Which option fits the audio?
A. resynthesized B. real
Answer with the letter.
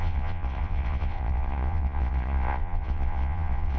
A